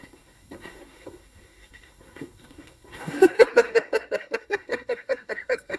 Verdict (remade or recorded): remade